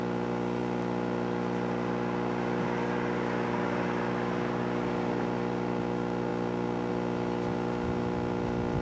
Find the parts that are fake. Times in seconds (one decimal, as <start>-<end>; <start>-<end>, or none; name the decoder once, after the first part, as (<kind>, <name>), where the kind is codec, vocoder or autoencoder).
none